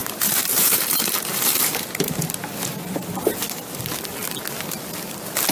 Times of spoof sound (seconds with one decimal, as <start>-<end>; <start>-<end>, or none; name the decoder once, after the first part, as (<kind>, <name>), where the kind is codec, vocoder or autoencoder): 0.0-2.1 (vocoder, BigVGAN v2)